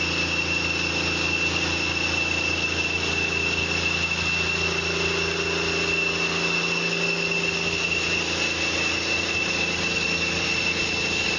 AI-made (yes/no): no